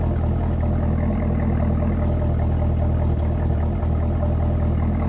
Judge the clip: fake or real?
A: real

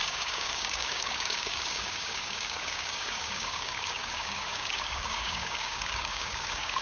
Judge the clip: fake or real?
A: fake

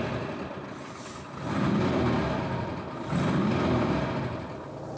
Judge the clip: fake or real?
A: real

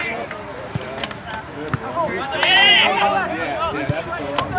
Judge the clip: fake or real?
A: real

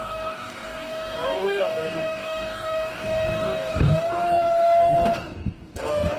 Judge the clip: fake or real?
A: fake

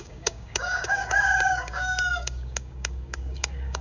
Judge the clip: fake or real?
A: fake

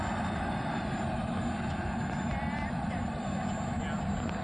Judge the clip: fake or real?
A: real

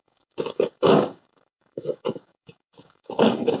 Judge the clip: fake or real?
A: fake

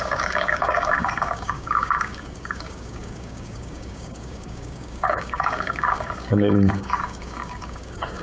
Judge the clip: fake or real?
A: fake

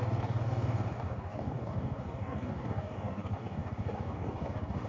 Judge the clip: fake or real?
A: fake